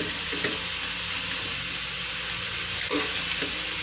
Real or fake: real